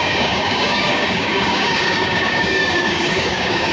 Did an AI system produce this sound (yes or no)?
yes